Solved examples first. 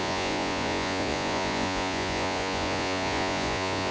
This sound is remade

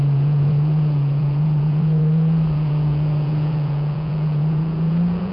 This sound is remade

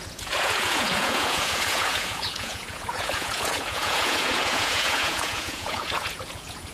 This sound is remade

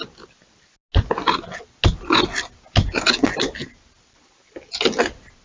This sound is recorded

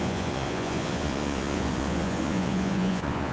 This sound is remade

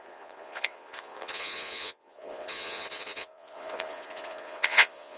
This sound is remade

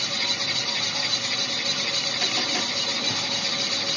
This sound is recorded